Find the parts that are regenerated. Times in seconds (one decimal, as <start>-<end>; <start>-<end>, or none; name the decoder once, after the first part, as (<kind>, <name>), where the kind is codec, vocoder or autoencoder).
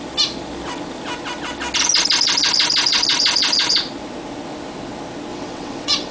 5.3-6.1 (vocoder, WaveNeXt)